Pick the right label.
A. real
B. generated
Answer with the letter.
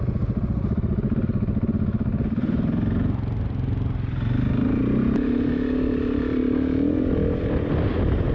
A